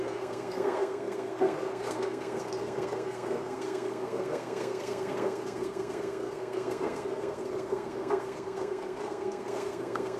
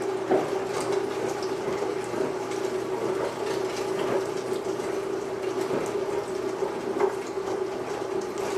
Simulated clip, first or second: first